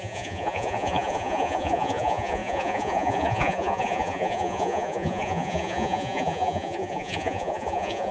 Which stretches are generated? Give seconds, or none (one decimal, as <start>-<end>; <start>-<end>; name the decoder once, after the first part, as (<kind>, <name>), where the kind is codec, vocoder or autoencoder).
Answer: 0.0-8.1 (vocoder, Vocos)